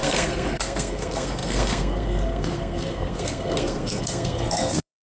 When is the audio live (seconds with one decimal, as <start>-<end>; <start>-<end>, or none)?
none